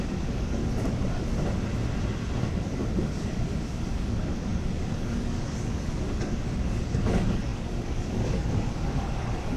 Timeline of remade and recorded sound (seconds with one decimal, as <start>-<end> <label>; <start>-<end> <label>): 0.0-0.6 remade; 0.6-2.5 recorded; 2.5-9.6 remade